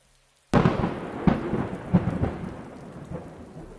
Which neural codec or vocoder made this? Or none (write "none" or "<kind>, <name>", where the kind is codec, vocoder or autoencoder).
none